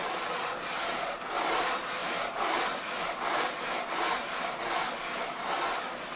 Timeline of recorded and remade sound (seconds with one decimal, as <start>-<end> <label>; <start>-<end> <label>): 0.0-6.2 recorded

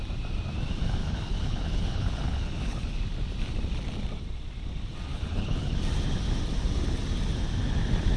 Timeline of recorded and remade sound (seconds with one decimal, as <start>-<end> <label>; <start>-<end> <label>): 0.0-1.0 recorded; 1.0-3.0 remade; 3.0-5.1 recorded; 5.1-5.8 remade; 5.8-8.2 recorded